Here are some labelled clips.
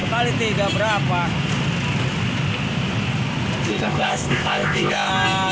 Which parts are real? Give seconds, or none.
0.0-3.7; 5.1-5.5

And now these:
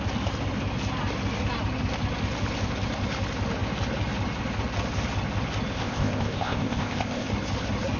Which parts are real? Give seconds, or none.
0.0-5.7; 7.3-8.0

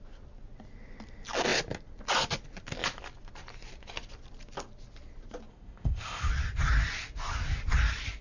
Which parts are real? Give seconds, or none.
0.0-5.5; 6.3-8.2

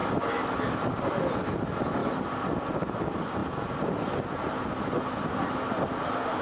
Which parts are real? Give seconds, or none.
0.0-6.4